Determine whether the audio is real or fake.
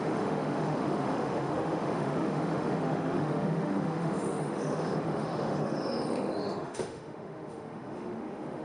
fake